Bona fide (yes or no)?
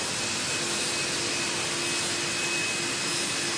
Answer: yes